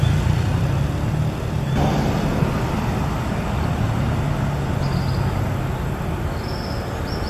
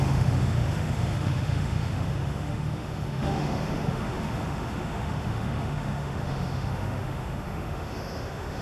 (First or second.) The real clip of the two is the first